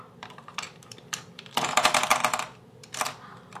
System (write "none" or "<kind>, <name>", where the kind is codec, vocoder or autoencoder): vocoder, BigVGAN v2